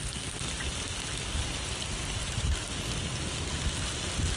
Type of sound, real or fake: real